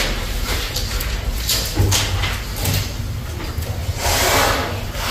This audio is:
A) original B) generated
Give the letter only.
A